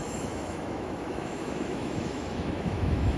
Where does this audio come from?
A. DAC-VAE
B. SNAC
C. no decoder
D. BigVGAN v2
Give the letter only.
A